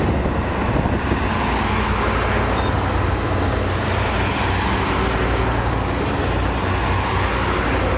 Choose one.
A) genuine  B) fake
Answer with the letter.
A